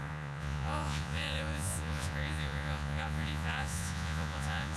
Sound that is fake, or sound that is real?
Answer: fake